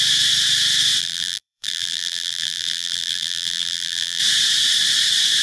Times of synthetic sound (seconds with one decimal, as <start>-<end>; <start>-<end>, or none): 1.0-4.2